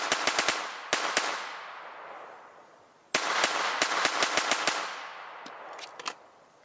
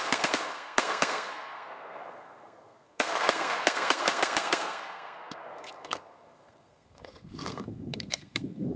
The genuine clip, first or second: first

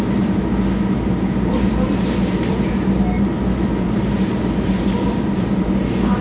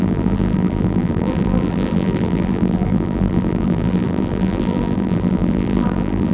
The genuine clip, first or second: first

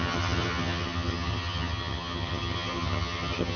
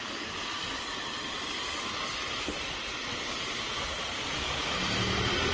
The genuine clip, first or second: second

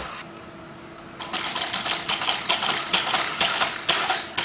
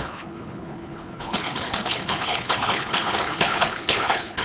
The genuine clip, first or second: first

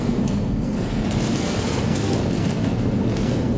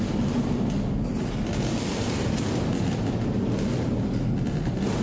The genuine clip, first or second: second